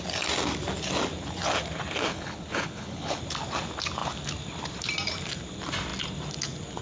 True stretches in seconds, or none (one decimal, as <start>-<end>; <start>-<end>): 0.0-2.1; 3.2-6.8